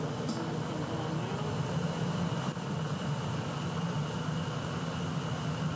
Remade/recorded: recorded